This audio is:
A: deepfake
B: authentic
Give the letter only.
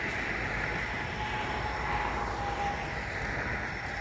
B